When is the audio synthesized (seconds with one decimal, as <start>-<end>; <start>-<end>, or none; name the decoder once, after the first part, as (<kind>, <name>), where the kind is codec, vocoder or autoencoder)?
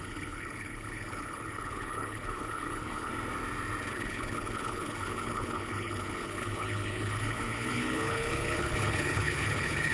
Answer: 0.0-3.1 (codec, HILCodec); 3.9-9.9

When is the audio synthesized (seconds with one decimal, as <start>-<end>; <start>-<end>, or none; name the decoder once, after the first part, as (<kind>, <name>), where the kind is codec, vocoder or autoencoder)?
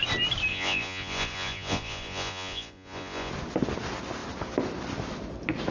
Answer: 0.5-3.3 (vocoder, Vocos)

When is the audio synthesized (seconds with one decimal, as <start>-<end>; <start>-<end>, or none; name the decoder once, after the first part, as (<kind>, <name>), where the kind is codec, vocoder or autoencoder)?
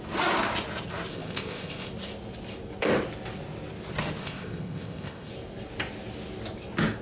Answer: 1.1-1.9 (codec, ZipCodec); 4.2-5.3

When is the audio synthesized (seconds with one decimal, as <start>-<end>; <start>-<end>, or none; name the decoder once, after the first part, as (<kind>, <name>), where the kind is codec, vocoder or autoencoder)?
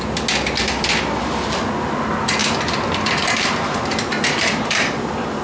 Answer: 2.4-5.4 (vocoder, BigVGAN v2)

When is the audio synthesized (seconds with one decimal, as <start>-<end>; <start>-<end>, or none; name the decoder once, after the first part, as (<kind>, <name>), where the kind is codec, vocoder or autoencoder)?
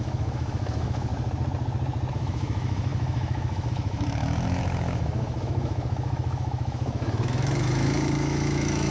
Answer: 0.0-1.1 (autoencoder, DAC-VAE); 2.1-8.9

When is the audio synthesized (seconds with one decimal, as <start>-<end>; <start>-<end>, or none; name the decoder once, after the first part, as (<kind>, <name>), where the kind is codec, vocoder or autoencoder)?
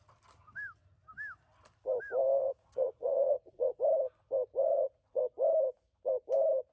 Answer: 2.4-3.8 (vocoder, Vocos); 4.6-5.2